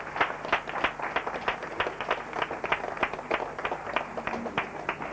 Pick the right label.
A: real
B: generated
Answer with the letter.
A